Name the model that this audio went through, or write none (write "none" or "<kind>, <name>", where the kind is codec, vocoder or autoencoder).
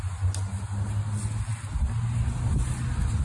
none